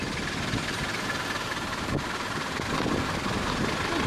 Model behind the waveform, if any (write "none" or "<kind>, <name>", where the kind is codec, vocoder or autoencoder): none